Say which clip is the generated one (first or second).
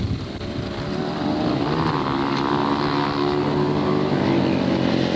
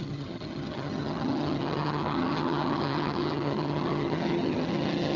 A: second